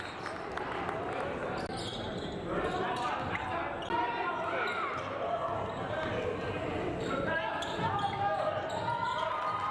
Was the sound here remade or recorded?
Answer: recorded